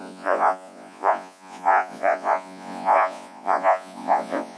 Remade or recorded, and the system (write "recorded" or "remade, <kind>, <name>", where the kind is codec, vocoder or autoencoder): remade, vocoder, Vocos